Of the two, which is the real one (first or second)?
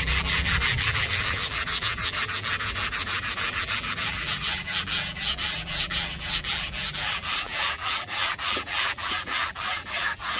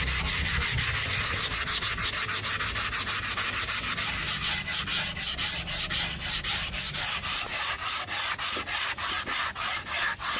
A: second